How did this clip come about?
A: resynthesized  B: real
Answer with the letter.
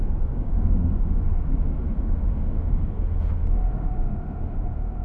A